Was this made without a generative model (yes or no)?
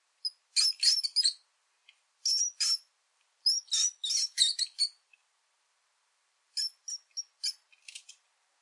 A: yes